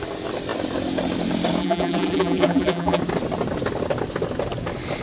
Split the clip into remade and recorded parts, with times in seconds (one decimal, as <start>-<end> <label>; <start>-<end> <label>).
0.0-1.6 recorded; 1.6-3.0 remade; 3.0-5.0 recorded